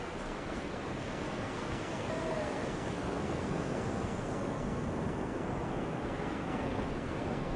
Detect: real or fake fake